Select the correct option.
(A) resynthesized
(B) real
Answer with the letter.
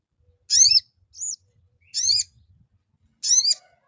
B